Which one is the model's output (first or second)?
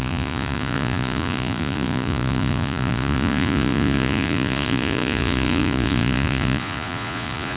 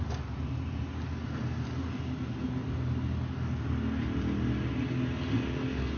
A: first